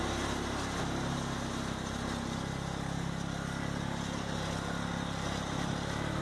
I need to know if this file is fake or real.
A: real